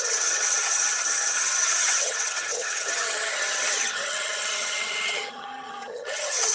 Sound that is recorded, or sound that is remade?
remade